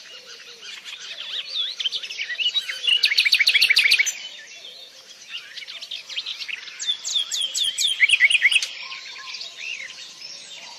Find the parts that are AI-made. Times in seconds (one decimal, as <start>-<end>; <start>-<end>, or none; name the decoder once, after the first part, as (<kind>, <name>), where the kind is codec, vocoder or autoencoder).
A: none